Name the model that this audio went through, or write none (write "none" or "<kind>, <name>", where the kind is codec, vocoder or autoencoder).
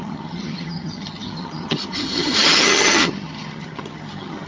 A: vocoder, HiFi-GAN